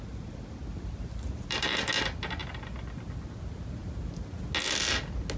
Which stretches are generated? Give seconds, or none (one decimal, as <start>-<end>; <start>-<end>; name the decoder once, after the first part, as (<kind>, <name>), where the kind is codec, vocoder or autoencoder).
0.7-1.9 (vocoder, BigVGAN v2)